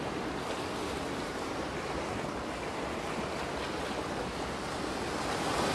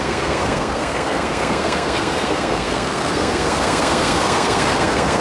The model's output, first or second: second